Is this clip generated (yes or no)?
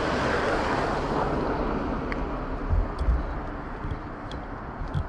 no